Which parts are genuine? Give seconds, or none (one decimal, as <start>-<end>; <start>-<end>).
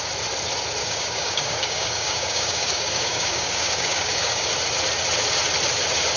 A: 0.0-0.8; 4.5-6.2